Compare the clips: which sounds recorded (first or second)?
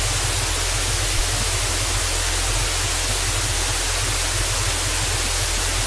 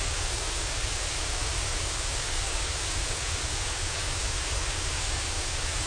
first